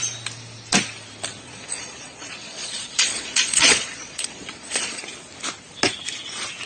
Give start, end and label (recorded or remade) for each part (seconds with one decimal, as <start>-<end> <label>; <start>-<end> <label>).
0.0-1.3 recorded; 1.3-5.0 remade; 5.0-6.7 recorded